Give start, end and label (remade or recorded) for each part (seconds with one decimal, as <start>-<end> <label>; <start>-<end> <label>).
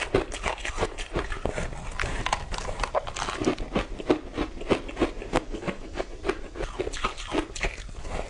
0.0-5.3 recorded; 5.3-6.1 remade; 6.1-8.3 recorded